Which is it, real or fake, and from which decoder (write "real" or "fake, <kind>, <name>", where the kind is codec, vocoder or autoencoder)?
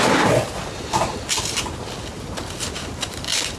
real